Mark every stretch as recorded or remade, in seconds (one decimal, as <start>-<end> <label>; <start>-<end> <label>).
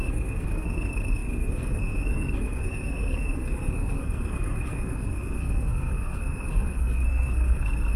0.0-8.0 remade